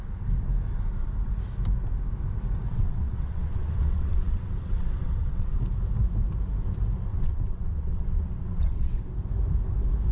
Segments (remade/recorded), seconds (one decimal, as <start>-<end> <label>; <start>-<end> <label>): 0.0-2.7 recorded; 2.7-5.6 remade; 5.6-7.1 recorded; 7.1-9.0 remade; 9.0-10.1 recorded